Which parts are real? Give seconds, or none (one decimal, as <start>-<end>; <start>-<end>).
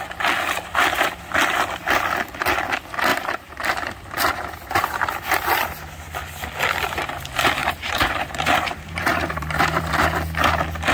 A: 0.0-3.1; 3.7-7.6; 9.9-10.9